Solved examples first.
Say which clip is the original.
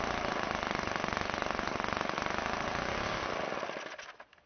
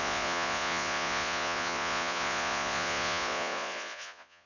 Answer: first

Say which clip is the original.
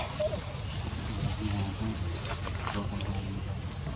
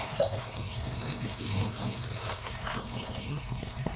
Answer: first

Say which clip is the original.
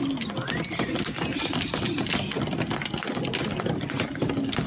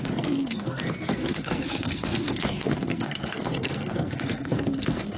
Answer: first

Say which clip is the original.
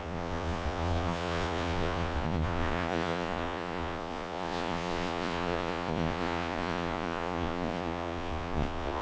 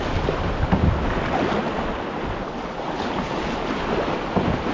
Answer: second